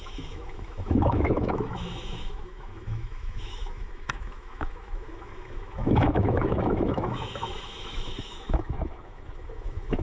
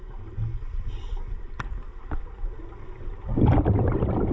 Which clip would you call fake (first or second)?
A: first